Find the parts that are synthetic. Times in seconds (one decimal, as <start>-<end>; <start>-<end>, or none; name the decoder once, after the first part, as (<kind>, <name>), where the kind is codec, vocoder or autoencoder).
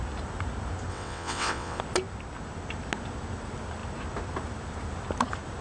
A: 0.9-1.8 (vocoder, WaveNeXt)